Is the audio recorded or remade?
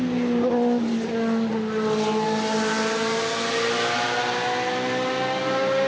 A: recorded